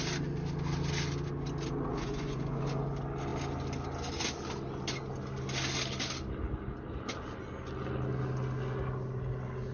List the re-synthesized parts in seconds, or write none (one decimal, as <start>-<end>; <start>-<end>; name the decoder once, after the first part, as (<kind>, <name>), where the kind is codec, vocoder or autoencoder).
1.9-2.6 (vocoder, Vocos)